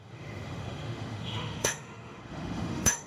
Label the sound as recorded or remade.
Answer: remade